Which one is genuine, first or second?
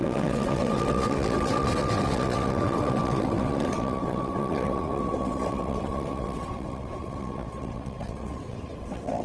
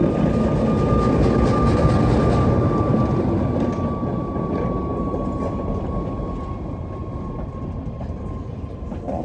second